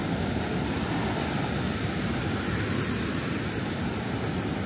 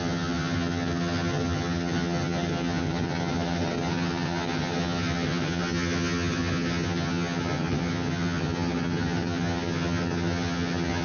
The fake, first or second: second